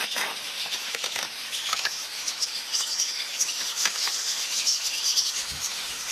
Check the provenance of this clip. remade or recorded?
remade